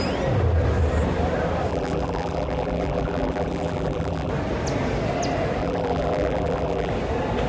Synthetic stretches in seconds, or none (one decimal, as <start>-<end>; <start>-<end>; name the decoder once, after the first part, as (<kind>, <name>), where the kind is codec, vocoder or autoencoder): 1.7-4.3 (vocoder, BigVGAN v2); 5.6-6.9